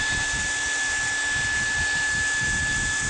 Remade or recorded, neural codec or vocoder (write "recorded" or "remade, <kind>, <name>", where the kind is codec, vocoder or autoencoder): recorded